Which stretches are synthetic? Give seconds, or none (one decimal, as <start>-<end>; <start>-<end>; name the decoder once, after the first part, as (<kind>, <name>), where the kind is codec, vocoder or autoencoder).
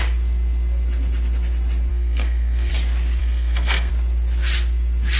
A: 1.9-2.7 (codec, SNAC); 3.2-3.9